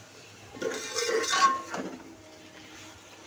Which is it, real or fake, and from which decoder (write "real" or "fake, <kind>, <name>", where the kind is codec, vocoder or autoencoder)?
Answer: real